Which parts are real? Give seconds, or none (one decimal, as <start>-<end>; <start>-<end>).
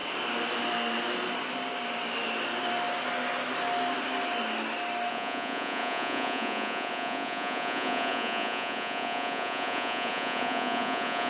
0.0-5.1